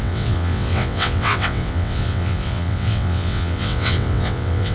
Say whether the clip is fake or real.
fake